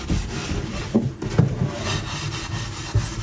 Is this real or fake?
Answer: real